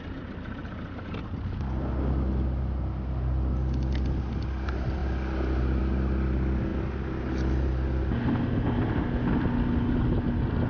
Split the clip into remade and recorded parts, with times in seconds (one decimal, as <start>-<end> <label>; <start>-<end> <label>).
0.0-10.7 recorded